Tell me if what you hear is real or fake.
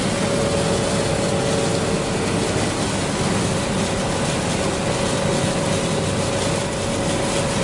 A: real